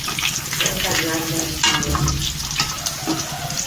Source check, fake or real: real